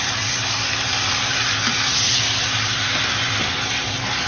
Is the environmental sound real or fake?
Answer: real